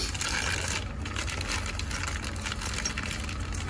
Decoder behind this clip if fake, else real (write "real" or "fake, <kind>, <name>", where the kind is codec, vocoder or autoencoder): real